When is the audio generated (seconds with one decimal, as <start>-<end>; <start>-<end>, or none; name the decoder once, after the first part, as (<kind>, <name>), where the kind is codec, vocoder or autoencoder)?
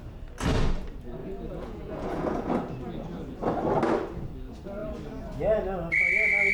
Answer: 1.2-2.5 (vocoder, Vocos)